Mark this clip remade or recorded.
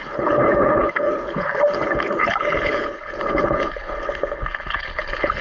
remade